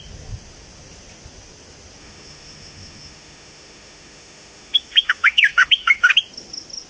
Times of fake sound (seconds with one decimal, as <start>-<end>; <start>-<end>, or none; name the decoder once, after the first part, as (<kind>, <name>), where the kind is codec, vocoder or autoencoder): 2.0-6.1 (autoencoder, DAC-VAE)